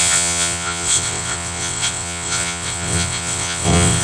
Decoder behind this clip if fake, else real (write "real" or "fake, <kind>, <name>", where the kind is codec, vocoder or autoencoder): fake, vocoder, WaveNeXt